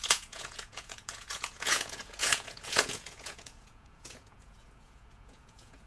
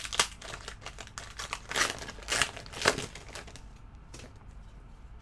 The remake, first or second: first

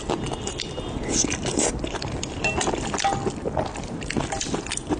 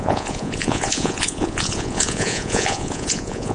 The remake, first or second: second